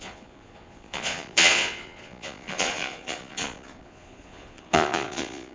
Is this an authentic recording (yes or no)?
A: no